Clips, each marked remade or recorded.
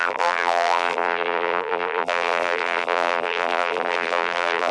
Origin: remade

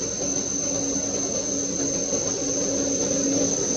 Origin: recorded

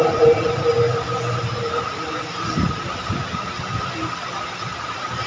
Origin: recorded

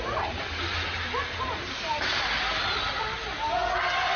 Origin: recorded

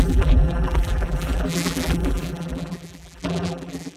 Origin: remade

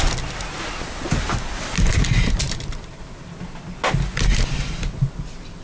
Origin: recorded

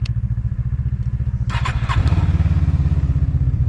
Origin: recorded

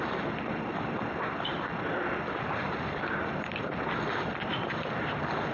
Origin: recorded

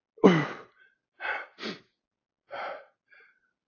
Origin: recorded